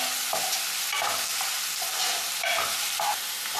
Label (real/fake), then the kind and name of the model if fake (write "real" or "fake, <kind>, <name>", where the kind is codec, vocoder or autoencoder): real